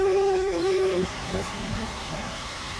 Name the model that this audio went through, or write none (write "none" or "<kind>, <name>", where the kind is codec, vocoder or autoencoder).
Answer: codec, SNAC